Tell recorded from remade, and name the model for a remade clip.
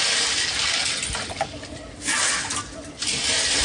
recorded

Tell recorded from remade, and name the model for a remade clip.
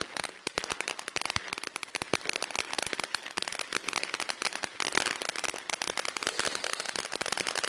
recorded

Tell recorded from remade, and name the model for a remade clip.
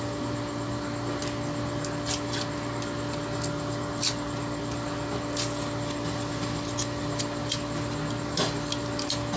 recorded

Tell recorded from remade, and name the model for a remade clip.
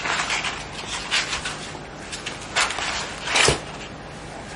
recorded